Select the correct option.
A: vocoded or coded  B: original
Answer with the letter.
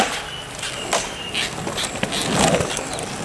B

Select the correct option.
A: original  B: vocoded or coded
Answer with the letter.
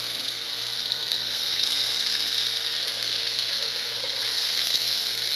B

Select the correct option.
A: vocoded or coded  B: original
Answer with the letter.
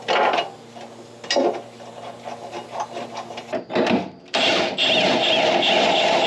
B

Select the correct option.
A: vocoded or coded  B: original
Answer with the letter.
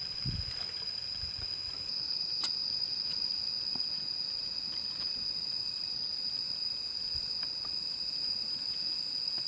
B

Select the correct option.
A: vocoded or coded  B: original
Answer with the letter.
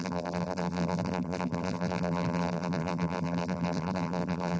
A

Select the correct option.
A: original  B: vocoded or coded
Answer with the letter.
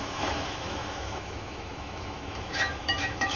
B